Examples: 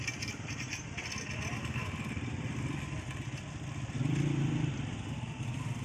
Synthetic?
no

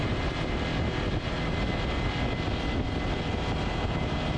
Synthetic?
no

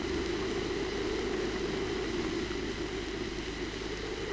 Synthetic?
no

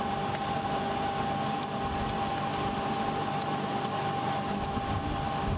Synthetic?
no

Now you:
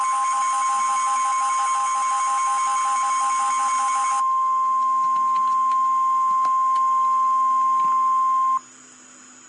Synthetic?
no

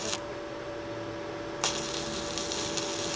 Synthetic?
no